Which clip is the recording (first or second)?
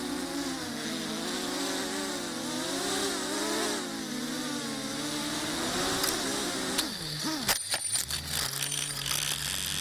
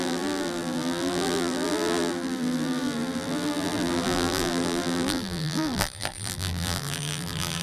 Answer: first